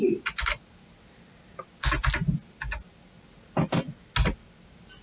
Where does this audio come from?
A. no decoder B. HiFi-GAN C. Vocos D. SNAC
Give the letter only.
A